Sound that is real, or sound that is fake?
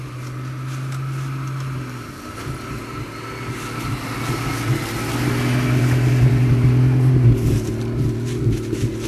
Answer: real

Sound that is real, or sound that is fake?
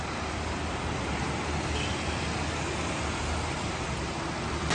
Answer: real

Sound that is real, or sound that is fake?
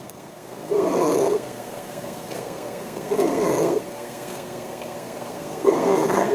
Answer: fake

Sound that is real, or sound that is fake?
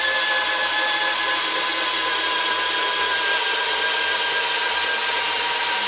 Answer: real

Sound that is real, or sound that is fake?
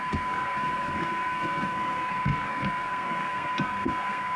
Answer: fake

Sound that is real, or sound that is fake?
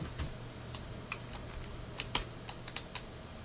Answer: real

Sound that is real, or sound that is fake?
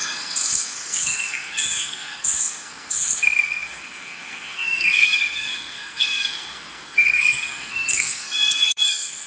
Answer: fake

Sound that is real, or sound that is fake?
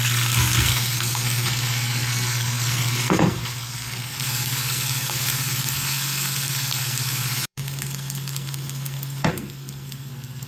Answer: fake